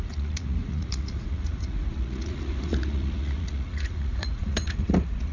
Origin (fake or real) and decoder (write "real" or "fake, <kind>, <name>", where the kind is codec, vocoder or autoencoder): fake, vocoder, Vocos